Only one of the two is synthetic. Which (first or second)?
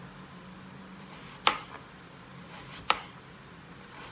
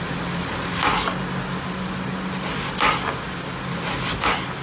first